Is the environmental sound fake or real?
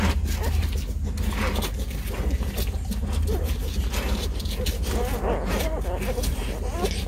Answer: real